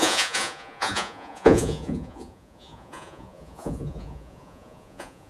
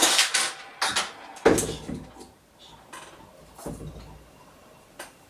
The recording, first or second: second